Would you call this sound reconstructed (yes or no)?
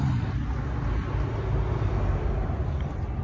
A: no